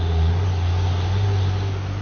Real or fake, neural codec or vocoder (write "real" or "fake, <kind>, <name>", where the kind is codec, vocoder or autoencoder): real